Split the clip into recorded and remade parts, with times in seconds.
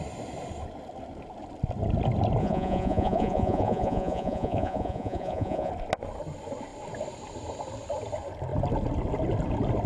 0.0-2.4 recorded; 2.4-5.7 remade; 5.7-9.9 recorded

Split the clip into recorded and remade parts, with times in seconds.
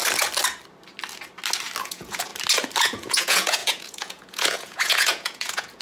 0.0-1.8 recorded; 1.8-2.3 remade; 2.3-2.8 recorded; 2.8-5.8 remade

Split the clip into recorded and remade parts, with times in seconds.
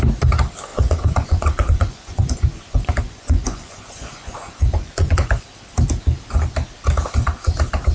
0.0-0.7 recorded; 0.7-5.4 remade; 5.4-7.9 recorded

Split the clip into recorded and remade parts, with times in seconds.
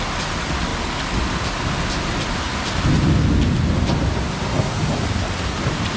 0.0-6.0 recorded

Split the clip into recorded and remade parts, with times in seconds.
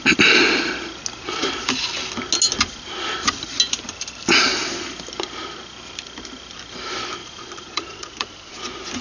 0.0-7.2 recorded; 7.2-8.5 remade; 8.5-9.0 recorded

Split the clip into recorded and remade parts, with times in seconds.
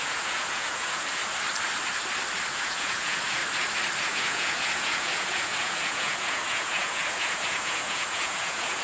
0.0-1.2 remade; 1.2-2.5 recorded; 2.5-3.4 remade; 3.4-4.0 recorded; 4.0-8.8 remade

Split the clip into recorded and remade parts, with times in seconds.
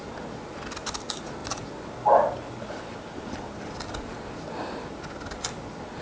0.0-6.0 recorded